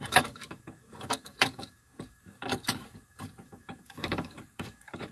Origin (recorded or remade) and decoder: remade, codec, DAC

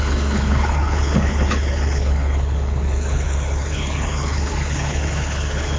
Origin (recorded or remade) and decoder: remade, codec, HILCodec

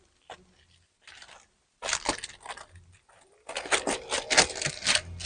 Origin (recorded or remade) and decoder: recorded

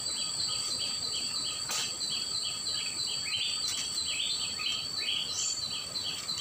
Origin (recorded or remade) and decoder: recorded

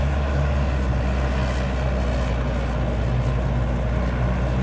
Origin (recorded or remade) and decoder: recorded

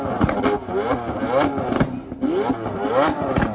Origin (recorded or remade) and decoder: recorded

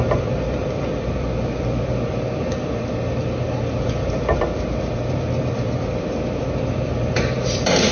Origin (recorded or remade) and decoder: remade, vocoder, BigVGAN v2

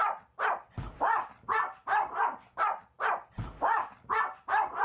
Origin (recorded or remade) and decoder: remade, vocoder, BigVGAN v2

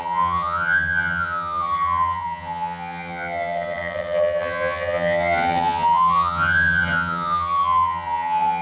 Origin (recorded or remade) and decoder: remade, vocoder, HiFi-GAN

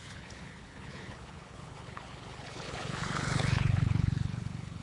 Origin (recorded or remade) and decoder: remade, codec, HILCodec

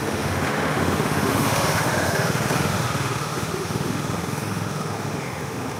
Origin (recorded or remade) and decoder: remade, autoencoder, DAC-VAE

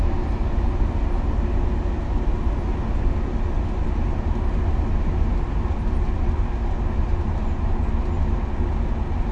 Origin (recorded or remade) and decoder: recorded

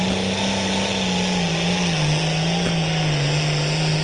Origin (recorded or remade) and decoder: recorded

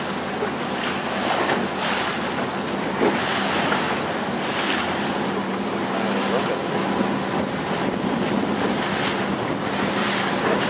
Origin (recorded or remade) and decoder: recorded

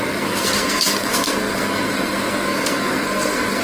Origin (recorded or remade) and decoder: remade, codec, SNAC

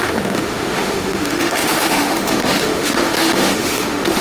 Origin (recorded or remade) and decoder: remade, autoencoder, DAC-VAE